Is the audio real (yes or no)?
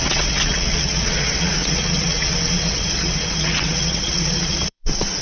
no